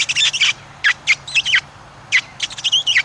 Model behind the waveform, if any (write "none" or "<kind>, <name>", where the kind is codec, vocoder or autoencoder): vocoder, BigVGAN v2